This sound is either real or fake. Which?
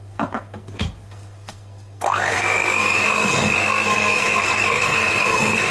fake